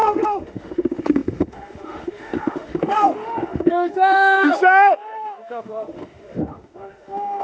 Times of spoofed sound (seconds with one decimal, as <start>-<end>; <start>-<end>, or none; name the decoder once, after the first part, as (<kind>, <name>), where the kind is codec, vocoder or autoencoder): 0.0-7.4 (autoencoder, DAC-VAE)